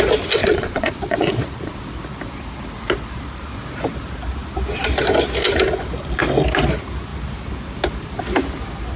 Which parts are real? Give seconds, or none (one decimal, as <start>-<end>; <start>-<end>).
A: 0.0-0.4; 1.7-9.0